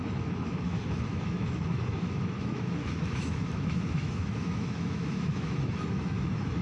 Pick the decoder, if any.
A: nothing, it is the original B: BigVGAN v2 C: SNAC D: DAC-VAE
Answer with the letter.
D